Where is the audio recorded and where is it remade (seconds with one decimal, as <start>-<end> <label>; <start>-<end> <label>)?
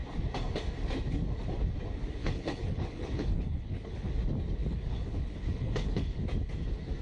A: 0.0-2.2 recorded; 2.2-4.1 remade; 4.1-4.6 recorded; 4.6-6.2 remade; 6.2-7.0 recorded